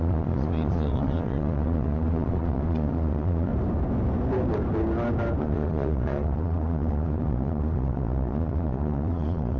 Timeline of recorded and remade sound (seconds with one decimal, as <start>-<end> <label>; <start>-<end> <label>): 0.0-3.5 remade; 3.5-5.4 recorded; 5.4-9.6 remade

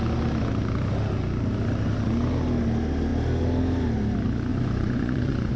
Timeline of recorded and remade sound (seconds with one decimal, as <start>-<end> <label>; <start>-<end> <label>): 0.0-4.5 recorded; 4.5-5.6 remade